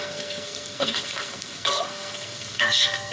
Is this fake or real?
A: fake